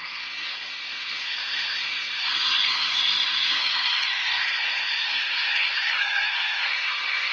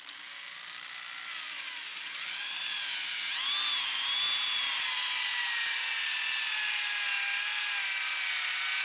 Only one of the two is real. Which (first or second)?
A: second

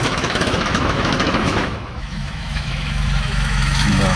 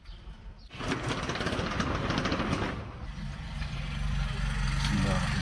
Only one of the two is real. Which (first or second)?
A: second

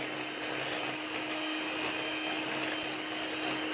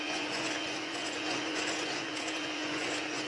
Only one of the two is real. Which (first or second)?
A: first